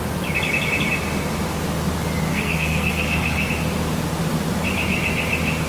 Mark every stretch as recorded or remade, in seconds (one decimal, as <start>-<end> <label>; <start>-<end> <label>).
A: 0.0-2.3 recorded; 2.3-3.5 remade; 3.5-5.7 recorded